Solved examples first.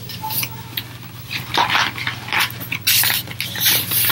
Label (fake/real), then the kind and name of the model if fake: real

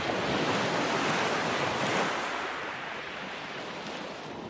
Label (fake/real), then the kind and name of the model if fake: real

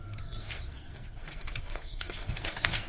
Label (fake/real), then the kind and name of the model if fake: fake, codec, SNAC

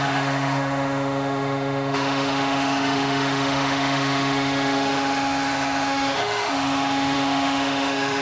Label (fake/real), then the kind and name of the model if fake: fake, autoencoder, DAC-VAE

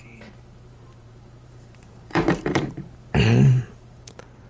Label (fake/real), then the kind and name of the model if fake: fake, vocoder, BigVGAN v2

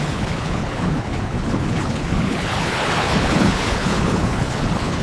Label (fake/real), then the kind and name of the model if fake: fake, codec, HILCodec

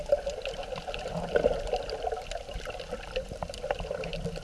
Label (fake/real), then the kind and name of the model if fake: real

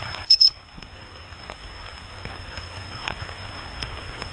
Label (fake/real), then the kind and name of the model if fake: fake, codec, SNAC